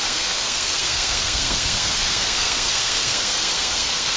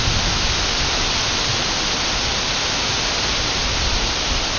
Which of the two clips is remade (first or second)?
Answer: first